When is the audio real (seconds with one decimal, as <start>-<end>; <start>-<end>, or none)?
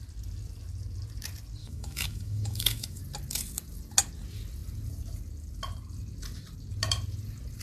0.0-1.6; 3.0-7.6